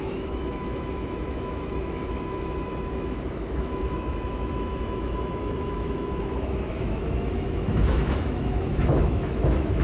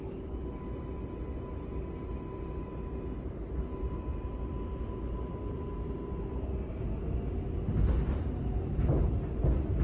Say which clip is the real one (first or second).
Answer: second